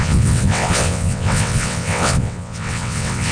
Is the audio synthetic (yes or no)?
yes